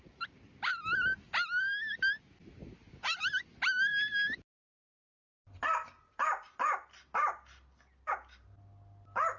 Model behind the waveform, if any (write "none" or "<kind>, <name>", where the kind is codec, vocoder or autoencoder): none